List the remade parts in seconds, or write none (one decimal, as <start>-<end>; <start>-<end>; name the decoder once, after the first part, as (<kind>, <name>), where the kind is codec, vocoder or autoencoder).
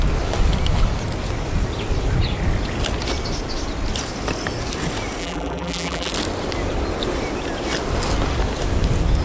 5.2-6.1 (vocoder, BigVGAN v2)